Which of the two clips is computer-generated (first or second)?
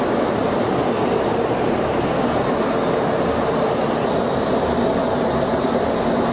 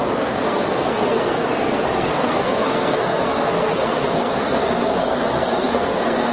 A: second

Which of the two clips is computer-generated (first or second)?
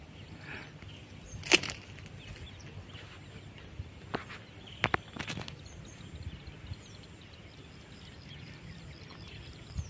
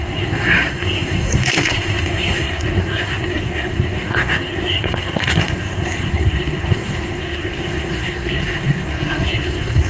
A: second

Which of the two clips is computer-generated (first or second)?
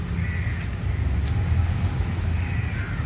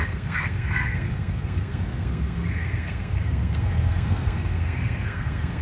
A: second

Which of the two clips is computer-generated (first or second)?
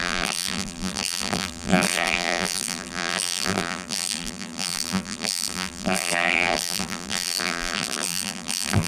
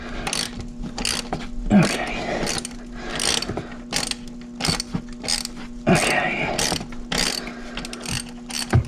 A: first